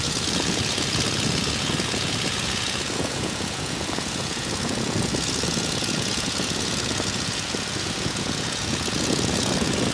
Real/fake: fake